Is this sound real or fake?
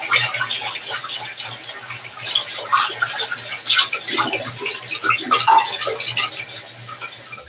real